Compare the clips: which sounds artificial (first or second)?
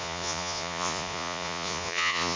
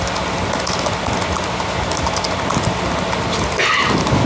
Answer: first